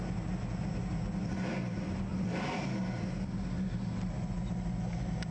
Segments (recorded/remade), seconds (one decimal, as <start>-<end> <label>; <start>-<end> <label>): 0.0-5.3 recorded